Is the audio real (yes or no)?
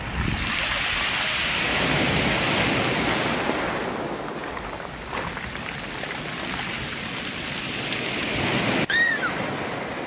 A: yes